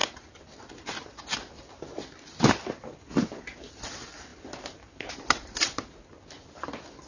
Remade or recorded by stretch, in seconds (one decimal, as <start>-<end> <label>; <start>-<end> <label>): 0.0-7.1 recorded